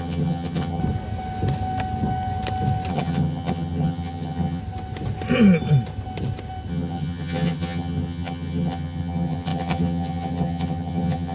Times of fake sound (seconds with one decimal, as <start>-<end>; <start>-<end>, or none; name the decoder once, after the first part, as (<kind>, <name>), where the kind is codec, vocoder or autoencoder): 0.0-0.8 (vocoder, HiFi-GAN); 2.9-4.6; 6.7-11.3